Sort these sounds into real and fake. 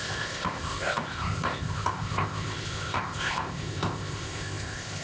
fake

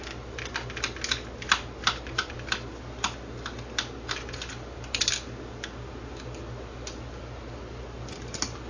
real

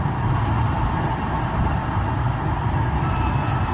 real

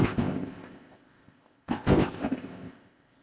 fake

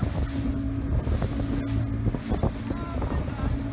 real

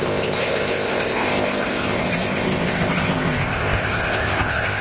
fake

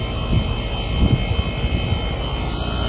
real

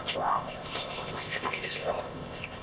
fake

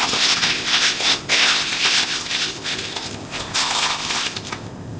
fake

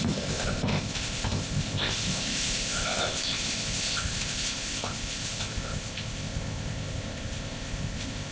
fake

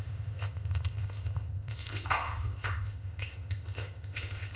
fake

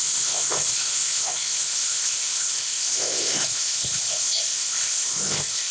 fake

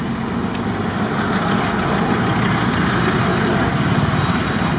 real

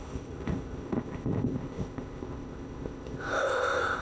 fake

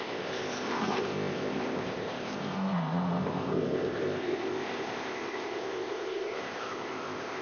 fake